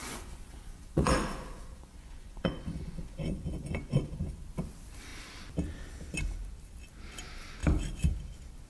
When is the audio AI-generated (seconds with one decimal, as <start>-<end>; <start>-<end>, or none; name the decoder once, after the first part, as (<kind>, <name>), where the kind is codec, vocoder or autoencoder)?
0.0-4.3 (vocoder, Vocos)

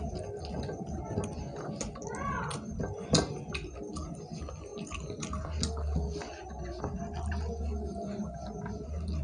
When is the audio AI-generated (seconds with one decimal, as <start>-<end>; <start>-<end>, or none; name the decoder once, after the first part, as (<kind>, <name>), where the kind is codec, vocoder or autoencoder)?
none

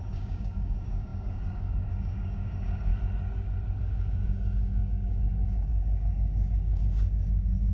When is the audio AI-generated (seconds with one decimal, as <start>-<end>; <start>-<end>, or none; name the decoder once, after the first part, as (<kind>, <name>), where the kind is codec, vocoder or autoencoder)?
0.0-2.9 (codec, DAC); 3.8-7.7

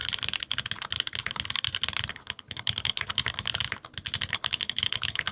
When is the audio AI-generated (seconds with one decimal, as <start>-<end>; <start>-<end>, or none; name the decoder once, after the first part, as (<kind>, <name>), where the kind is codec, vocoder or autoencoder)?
2.1-3.2 (codec, HILCodec); 4.3-5.3

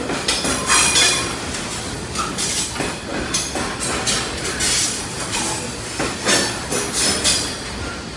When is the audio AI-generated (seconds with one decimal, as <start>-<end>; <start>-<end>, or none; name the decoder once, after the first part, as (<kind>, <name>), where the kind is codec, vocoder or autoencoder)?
none

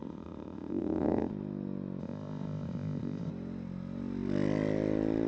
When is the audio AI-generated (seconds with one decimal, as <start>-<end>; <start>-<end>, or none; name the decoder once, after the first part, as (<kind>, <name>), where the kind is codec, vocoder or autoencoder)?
0.0-1.3 (codec, ZipCodec); 2.0-3.3

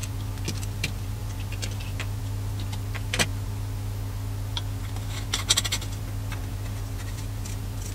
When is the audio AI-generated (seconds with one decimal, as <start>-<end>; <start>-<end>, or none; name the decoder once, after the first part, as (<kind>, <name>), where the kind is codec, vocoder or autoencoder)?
none